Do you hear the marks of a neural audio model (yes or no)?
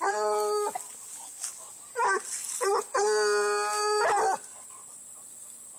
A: no